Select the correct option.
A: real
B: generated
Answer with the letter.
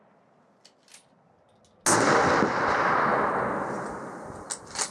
A